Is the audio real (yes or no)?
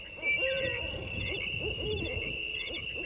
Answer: no